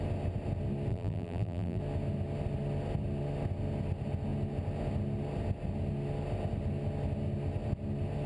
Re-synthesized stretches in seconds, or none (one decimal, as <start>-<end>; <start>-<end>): 0.9-1.8